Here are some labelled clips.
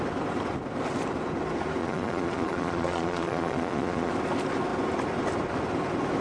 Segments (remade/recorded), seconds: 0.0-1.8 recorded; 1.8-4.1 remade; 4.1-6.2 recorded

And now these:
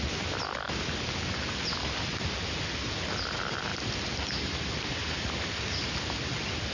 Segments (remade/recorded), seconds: 0.0-6.7 recorded

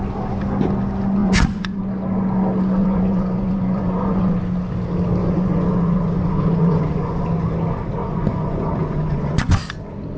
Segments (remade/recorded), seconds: 0.0-1.2 recorded; 1.2-1.8 remade; 1.8-2.8 recorded; 2.8-4.4 remade; 4.4-5.2 recorded; 5.2-7.2 remade; 7.2-8.0 recorded; 8.0-9.6 remade; 9.6-10.2 recorded

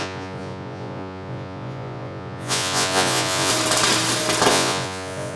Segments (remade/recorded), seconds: 0.0-3.5 remade; 3.5-4.5 recorded; 4.5-5.4 remade

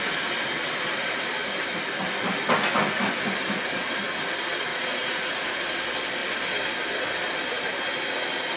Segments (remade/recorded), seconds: 0.0-4.7 recorded; 4.7-5.6 remade; 5.6-8.6 recorded

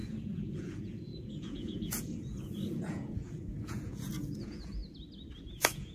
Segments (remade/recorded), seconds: 0.0-4.8 remade; 4.8-5.5 recorded; 5.5-5.9 remade

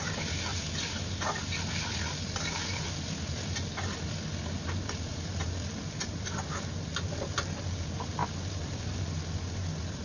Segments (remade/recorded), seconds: 0.0-10.0 recorded